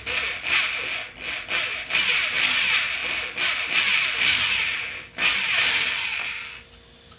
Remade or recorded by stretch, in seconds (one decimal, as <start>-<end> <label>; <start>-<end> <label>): 0.0-7.2 recorded